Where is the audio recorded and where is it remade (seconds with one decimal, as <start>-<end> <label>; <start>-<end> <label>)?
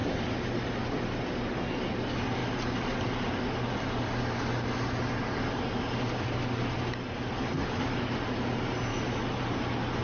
0.0-8.9 recorded; 8.9-9.4 remade; 9.4-10.0 recorded